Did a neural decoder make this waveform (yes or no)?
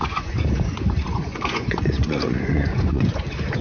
yes